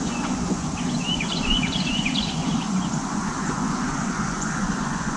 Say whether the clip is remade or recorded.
remade